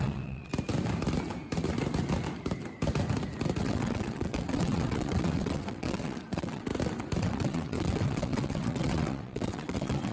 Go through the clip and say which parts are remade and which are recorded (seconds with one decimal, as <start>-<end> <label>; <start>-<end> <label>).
0.0-0.5 remade; 0.5-3.6 recorded; 3.6-6.7 remade; 6.7-7.2 recorded; 7.2-10.1 remade